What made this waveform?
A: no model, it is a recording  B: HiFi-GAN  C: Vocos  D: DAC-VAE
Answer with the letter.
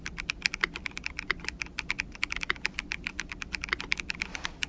A